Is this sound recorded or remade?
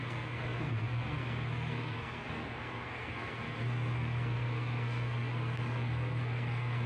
remade